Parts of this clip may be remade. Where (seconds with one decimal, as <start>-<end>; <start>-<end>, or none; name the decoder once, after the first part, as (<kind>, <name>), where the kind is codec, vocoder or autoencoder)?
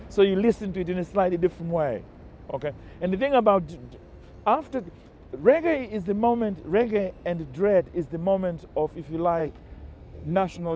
9.4-10.8 (codec, SNAC)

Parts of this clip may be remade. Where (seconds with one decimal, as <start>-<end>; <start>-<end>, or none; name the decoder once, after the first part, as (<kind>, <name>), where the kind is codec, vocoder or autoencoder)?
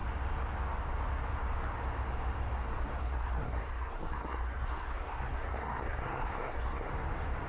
3.0-6.9 (codec, SNAC)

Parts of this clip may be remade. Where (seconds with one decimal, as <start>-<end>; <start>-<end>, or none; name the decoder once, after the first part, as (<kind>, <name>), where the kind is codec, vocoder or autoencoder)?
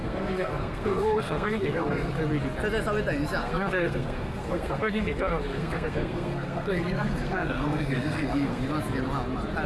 0.0-2.2 (codec, SNAC); 3.4-8.6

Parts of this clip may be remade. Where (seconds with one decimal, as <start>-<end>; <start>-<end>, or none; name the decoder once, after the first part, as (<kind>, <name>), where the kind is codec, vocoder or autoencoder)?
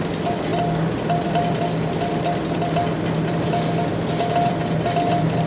none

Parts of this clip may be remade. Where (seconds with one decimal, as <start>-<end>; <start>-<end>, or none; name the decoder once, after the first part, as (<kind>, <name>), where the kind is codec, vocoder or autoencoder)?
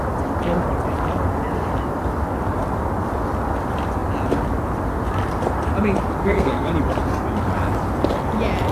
6.2-6.7 (codec, SNAC)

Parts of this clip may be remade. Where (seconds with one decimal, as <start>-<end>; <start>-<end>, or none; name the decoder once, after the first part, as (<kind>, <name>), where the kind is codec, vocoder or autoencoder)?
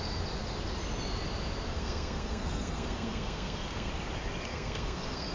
1.7-3.9 (codec, SNAC); 4.5-5.3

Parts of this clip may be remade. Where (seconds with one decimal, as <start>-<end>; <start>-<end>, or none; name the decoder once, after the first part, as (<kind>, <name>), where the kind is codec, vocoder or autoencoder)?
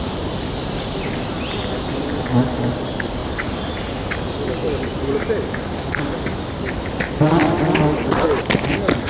none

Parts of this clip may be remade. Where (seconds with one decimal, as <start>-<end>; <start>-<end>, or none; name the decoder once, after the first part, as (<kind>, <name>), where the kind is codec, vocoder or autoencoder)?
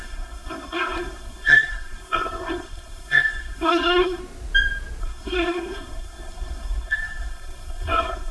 0.0-4.2 (codec, SNAC); 5.0-8.3